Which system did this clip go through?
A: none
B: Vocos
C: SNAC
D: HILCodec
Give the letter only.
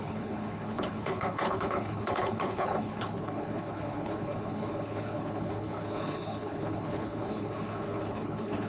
D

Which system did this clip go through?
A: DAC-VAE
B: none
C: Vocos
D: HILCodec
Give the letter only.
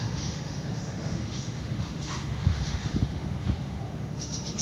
A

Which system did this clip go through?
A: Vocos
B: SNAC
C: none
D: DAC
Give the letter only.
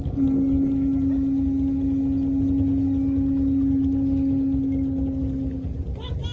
C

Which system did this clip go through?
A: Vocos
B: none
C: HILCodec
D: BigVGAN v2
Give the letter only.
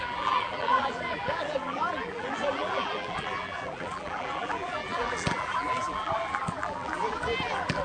D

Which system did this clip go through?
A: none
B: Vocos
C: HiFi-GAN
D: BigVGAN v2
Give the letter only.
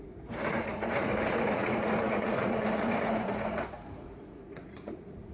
B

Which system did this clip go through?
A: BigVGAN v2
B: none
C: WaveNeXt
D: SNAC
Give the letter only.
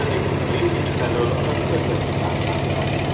B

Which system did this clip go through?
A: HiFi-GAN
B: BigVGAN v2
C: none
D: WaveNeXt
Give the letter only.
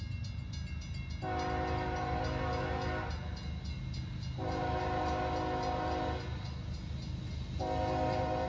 C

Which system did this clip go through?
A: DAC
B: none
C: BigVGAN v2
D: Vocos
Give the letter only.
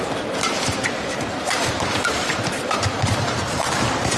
C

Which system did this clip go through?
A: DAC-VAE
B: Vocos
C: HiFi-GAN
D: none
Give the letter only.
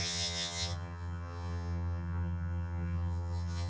C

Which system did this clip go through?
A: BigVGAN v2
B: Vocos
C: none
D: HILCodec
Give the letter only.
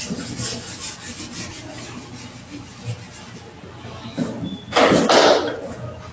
C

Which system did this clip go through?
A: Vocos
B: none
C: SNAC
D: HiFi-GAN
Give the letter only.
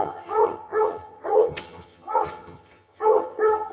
D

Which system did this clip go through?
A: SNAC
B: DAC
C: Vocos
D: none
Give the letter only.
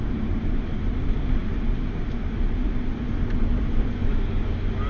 D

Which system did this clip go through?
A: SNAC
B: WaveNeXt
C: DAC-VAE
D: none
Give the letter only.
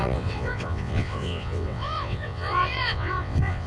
B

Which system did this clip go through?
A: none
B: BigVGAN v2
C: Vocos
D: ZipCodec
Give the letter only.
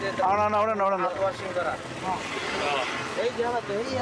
A